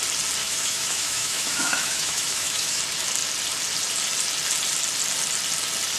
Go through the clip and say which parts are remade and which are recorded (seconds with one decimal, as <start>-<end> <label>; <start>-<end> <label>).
0.0-0.4 recorded; 0.4-2.8 remade; 2.8-6.0 recorded